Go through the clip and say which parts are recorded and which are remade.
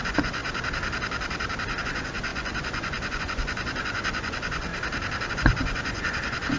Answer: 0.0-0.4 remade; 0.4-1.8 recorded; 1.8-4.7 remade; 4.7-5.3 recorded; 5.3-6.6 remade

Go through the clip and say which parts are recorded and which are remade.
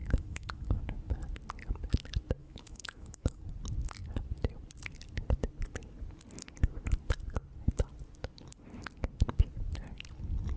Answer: 0.0-0.8 remade; 0.8-2.4 recorded; 2.4-3.4 remade; 3.4-10.6 recorded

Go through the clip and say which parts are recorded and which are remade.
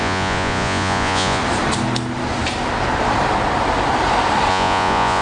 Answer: 0.0-1.4 remade; 1.4-4.5 recorded; 4.5-5.2 remade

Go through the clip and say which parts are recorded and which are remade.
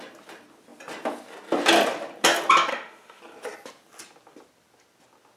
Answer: 0.0-2.7 recorded; 2.7-3.2 remade; 3.2-5.4 recorded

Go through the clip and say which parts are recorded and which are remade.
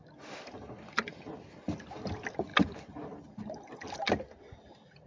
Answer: 0.0-5.1 recorded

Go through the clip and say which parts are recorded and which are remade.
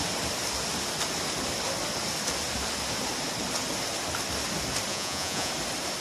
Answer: 0.0-4.9 recorded; 4.9-5.5 remade; 5.5-6.0 recorded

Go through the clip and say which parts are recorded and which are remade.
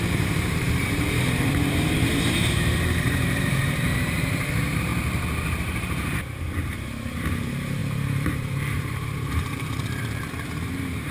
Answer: 0.0-4.9 remade; 4.9-5.5 recorded; 5.5-11.1 remade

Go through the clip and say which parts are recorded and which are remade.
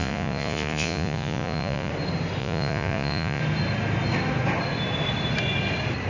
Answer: 0.0-1.9 remade; 1.9-2.4 recorded; 2.4-3.4 remade; 3.4-6.1 recorded